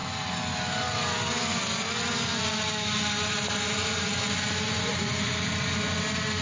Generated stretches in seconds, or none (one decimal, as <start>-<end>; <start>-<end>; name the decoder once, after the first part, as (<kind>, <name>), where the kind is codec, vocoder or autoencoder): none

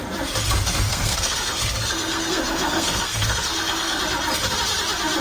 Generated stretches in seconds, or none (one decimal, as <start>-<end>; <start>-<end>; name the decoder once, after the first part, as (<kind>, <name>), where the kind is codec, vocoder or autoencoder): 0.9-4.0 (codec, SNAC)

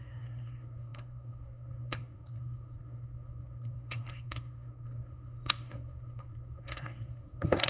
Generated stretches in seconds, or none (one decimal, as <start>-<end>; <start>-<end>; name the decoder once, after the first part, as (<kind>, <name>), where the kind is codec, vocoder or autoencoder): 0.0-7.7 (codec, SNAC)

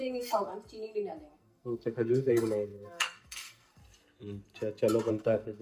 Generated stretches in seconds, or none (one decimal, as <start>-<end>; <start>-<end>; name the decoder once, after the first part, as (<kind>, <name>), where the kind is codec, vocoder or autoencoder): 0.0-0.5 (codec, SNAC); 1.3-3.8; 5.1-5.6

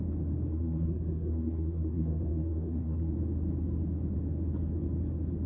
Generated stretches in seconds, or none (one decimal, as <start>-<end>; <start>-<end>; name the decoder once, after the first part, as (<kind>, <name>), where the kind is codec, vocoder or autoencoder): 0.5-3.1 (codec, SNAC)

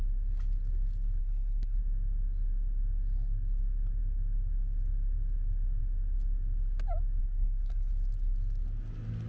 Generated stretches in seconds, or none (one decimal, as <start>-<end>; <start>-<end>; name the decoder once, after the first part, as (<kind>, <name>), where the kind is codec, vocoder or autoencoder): 1.2-1.8 (codec, SNAC); 7.2-7.9